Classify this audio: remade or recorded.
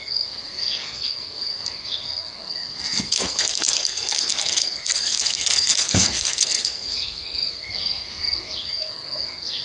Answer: remade